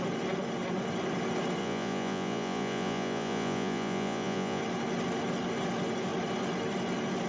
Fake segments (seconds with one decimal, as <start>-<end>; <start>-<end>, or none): 1.6-4.6

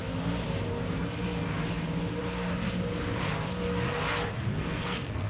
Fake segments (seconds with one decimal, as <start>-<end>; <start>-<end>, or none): 4.5-5.3